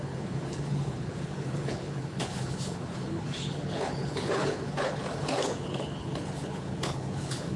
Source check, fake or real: fake